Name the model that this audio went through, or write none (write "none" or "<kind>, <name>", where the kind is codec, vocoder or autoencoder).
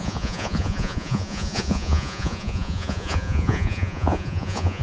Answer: vocoder, Vocos